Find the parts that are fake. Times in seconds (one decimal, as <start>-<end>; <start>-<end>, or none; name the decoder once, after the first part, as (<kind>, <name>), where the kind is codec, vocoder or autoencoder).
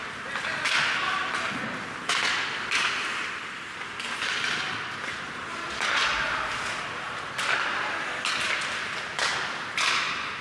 none